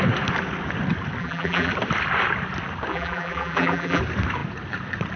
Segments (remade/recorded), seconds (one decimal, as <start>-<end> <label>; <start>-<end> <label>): 0.0-1.2 recorded; 1.2-1.7 remade; 1.7-2.9 recorded; 2.9-4.0 remade; 4.0-5.2 recorded